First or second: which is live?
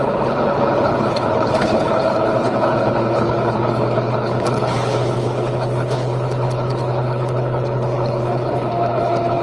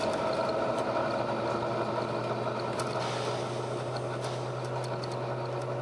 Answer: second